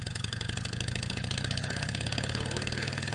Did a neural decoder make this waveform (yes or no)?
yes